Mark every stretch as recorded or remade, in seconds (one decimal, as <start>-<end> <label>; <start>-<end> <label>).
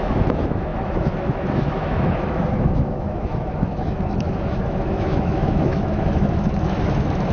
0.0-7.3 remade